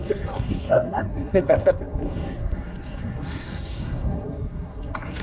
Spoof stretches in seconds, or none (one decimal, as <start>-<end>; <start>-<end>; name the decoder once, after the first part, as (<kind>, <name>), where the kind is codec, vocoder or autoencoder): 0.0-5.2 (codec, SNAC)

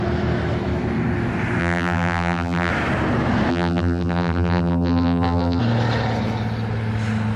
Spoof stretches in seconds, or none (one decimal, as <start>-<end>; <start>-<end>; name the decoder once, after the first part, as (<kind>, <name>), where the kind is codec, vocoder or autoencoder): 1.6-2.7 (vocoder, BigVGAN v2); 3.5-5.6

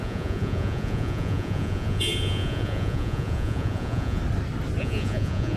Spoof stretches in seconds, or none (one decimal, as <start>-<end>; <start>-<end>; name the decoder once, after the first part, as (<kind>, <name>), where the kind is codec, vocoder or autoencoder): 0.0-4.2 (vocoder, Vocos); 4.8-5.6

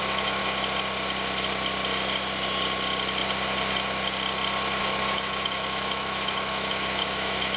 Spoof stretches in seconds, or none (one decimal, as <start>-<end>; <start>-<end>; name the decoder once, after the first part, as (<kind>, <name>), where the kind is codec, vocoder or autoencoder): 0.0-0.4 (autoencoder, DAC-VAE); 4.8-7.6

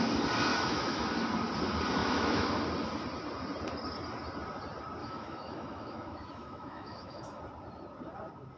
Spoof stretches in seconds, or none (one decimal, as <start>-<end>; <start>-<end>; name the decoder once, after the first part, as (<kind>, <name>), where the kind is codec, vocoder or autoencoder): 0.5-1.1 (autoencoder, DAC-VAE); 2.0-2.5; 5.0-7.4

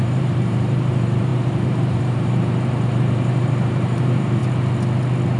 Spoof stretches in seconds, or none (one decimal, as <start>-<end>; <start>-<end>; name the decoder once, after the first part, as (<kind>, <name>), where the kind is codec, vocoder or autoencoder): 0.0-4.4 (vocoder, BigVGAN v2)